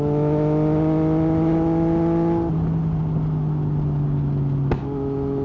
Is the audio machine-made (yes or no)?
no